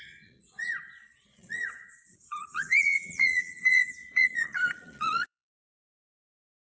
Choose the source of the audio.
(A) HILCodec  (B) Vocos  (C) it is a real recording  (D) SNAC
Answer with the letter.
B